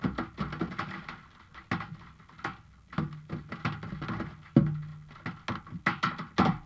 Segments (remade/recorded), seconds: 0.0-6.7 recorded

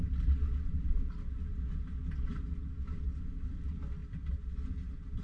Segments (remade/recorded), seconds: 0.0-5.2 recorded

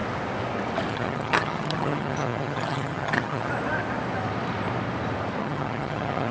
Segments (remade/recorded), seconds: 0.0-0.9 recorded; 0.9-3.5 remade; 3.5-5.4 recorded; 5.4-6.3 remade

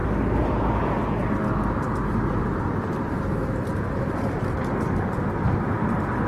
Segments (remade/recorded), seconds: 0.0-3.7 recorded; 3.7-4.4 remade; 4.4-6.3 recorded

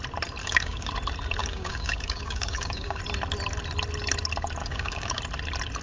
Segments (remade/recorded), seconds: 0.0-0.4 recorded; 0.4-0.9 remade; 0.9-1.4 recorded; 1.4-3.0 remade; 3.0-4.6 recorded; 4.6-5.2 remade; 5.2-5.8 recorded

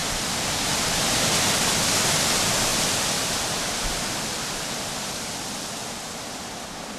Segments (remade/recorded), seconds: 0.0-1.7 remade; 1.7-2.7 recorded; 2.7-6.6 remade; 6.6-7.0 recorded

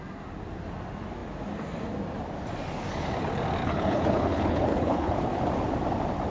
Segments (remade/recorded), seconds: 0.0-3.6 recorded; 3.6-5.4 remade; 5.4-6.3 recorded

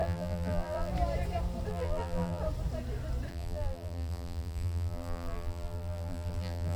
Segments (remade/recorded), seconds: 0.0-0.9 remade; 0.9-1.7 recorded; 1.7-2.4 remade; 2.4-3.3 recorded; 3.3-6.8 remade